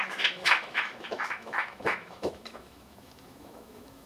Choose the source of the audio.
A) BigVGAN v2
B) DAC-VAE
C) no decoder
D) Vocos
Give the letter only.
B